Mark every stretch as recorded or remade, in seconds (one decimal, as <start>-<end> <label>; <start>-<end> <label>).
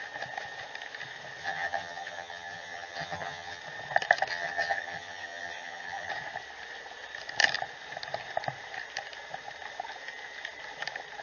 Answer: 0.0-1.4 recorded; 1.4-3.6 remade; 3.6-4.3 recorded; 4.3-6.1 remade; 6.1-11.2 recorded